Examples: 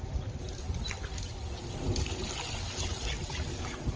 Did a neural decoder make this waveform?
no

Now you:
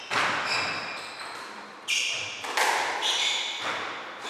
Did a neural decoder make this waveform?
no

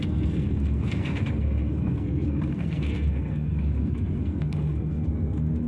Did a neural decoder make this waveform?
yes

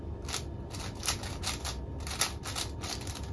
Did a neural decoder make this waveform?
no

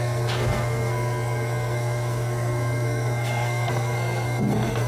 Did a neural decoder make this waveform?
yes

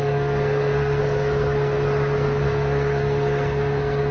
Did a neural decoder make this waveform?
yes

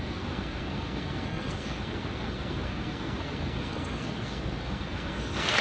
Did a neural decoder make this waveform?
yes